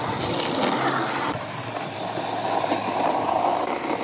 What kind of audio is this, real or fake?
real